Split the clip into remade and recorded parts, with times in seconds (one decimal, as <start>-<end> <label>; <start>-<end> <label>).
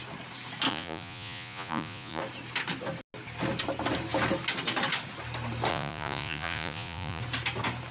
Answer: 0.0-0.7 recorded; 0.7-2.2 remade; 2.2-5.7 recorded; 5.7-7.2 remade; 7.2-7.9 recorded